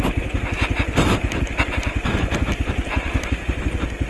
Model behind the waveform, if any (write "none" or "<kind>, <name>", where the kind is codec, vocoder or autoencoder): none